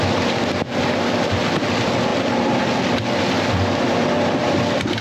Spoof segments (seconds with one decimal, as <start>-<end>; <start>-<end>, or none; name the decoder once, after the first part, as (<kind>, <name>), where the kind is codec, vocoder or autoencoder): none